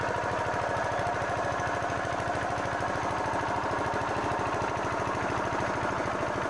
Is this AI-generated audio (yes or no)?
no